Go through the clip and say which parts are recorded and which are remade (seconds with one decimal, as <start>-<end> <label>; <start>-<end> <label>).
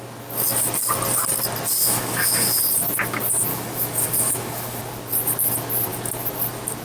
0.0-1.8 recorded; 1.8-2.6 remade; 2.6-3.5 recorded; 3.5-4.8 remade; 4.8-6.8 recorded